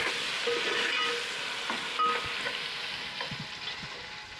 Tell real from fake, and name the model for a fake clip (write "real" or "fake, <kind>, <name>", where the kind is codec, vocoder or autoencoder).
real